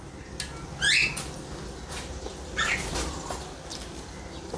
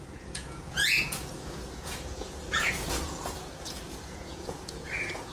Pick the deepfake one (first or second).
second